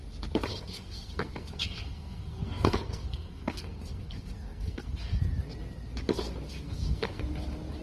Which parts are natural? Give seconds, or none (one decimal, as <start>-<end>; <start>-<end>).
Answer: 0.0-0.5; 5.2-6.5; 7.2-7.8